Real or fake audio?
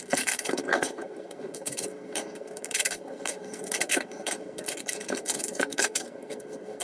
fake